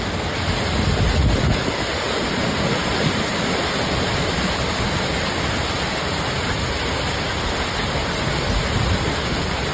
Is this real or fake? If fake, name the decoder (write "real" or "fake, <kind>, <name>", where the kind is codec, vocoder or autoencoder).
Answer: real